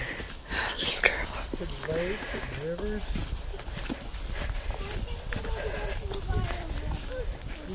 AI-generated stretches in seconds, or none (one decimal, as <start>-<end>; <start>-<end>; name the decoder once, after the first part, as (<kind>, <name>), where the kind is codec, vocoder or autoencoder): none